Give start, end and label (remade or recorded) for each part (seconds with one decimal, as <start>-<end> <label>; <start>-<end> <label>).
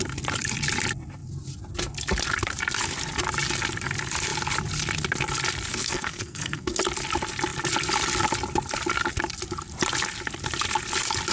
0.0-5.7 recorded; 5.7-6.8 remade; 6.8-11.3 recorded